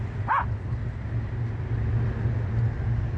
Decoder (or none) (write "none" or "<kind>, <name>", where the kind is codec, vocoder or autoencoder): none